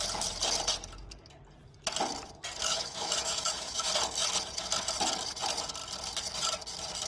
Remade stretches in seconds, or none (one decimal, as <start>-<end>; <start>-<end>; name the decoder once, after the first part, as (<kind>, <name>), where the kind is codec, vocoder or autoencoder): 2.6-3.9 (autoencoder, DAC-VAE)